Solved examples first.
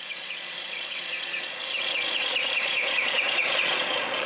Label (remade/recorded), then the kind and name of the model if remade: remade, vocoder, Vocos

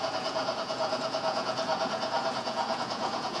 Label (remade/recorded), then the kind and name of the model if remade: remade, vocoder, Vocos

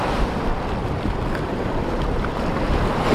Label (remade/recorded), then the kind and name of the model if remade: recorded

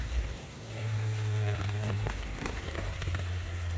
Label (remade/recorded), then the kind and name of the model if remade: remade, codec, SNAC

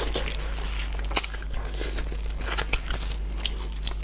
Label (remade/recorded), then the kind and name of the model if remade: recorded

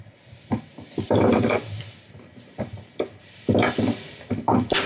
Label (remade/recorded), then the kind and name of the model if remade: remade, vocoder, BigVGAN v2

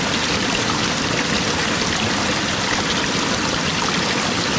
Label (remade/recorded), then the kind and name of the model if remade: recorded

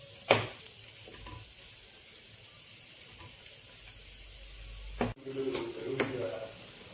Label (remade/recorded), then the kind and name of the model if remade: recorded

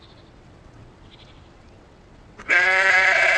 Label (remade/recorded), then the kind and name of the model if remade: remade, vocoder, WaveNeXt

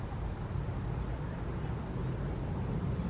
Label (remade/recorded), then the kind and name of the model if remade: recorded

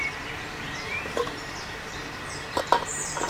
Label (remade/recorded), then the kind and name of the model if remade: remade, vocoder, BigVGAN v2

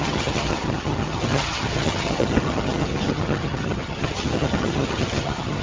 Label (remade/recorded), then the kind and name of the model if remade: remade, vocoder, HiFi-GAN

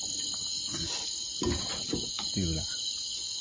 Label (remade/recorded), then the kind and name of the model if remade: recorded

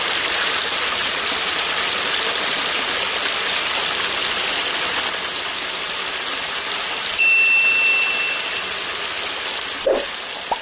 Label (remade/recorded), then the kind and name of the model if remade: recorded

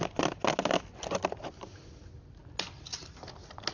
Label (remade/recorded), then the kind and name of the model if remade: recorded